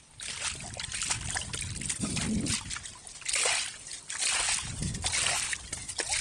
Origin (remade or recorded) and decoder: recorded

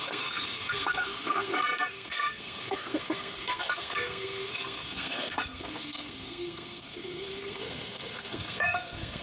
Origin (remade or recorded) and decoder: remade, codec, SNAC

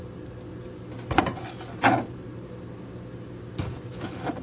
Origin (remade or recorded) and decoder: recorded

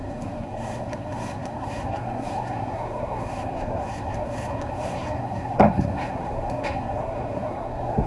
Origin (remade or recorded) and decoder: remade, codec, SNAC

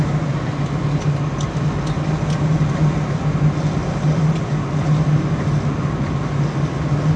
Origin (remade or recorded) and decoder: recorded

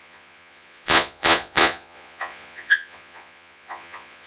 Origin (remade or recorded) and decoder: remade, vocoder, Vocos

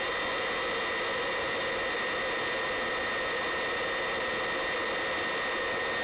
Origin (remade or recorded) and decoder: recorded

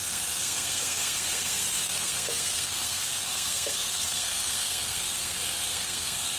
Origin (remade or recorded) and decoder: remade, codec, SNAC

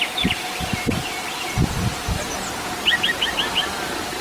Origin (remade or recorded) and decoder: recorded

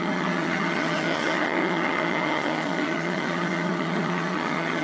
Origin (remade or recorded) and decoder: remade, vocoder, HiFi-GAN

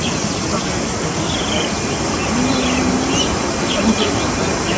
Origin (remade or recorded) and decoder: recorded